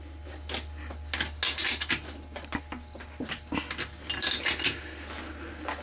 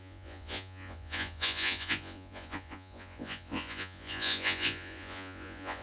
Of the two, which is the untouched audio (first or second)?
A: first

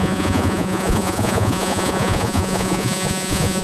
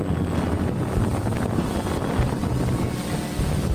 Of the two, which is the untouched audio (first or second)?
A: second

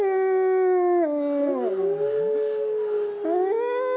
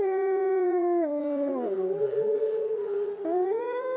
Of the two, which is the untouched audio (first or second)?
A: first